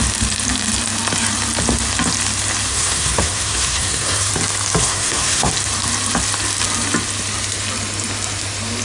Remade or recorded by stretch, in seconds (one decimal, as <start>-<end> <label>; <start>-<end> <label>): 0.0-2.7 recorded; 2.7-4.3 remade; 4.3-4.8 recorded; 4.8-5.5 remade; 5.5-8.8 recorded